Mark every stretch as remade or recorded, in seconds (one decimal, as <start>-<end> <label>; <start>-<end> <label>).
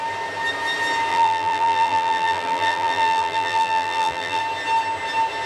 0.0-1.1 recorded; 1.1-4.4 remade; 4.4-5.5 recorded